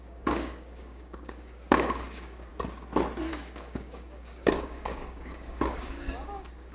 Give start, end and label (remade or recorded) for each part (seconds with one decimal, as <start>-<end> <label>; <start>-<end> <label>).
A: 0.0-2.5 remade; 2.5-3.3 recorded; 3.3-6.7 remade